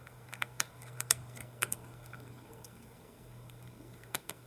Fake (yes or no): yes